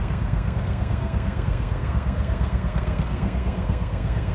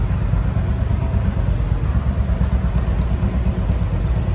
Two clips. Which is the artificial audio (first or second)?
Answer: first